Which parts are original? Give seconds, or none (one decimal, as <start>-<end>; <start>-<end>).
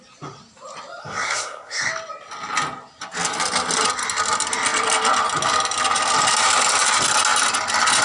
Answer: 0.0-1.0; 1.9-8.0